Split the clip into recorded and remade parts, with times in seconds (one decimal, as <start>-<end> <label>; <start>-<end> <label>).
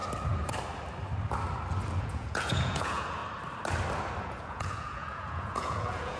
0.0-2.0 recorded; 2.0-3.2 remade; 3.2-4.2 recorded; 4.2-6.2 remade